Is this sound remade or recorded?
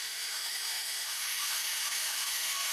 remade